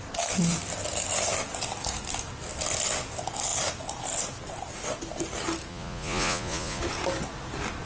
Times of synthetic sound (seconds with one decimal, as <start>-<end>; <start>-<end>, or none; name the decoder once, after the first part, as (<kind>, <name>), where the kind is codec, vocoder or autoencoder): 5.7-6.8 (vocoder, Vocos)